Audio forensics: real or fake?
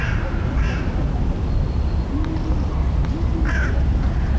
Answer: real